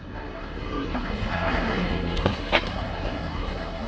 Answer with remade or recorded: remade